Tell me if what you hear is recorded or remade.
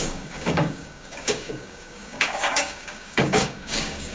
remade